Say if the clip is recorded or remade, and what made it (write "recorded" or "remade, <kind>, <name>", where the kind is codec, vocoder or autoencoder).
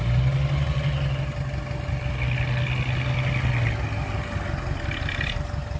recorded